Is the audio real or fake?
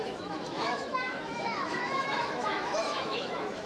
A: fake